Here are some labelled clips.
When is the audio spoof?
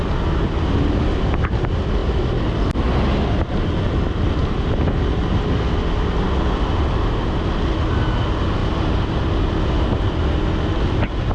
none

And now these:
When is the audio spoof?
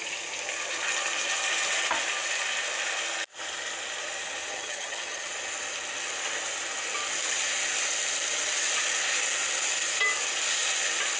4.5-5.3 (vocoder, HiFi-GAN)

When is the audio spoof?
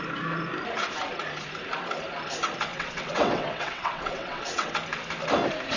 2.7-4.7 (vocoder, WaveNeXt)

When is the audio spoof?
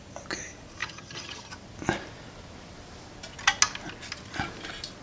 0.8-1.5 (vocoder, HiFi-GAN)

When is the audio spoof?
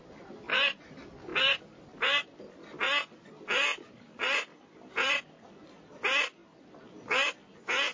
3.7-5.8 (vocoder, BigVGAN v2)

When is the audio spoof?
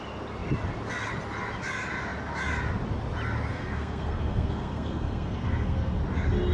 3.5-6.0 (codec, SNAC)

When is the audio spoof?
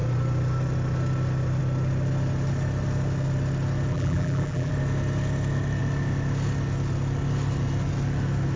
3.9-4.7 (vocoder, BigVGAN v2)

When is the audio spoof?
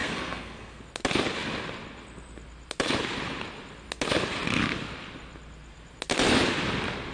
0.0-0.8 (codec, SNAC)